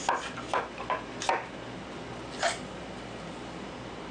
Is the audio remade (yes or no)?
no